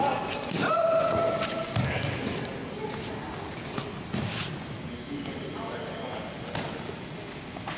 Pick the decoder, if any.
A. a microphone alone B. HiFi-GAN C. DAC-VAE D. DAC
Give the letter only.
A